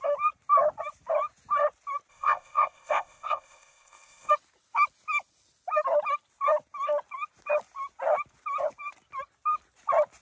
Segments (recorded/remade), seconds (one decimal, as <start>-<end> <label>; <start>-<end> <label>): 0.0-2.1 recorded; 2.1-4.3 remade; 4.3-10.2 recorded